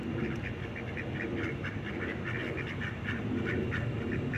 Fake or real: real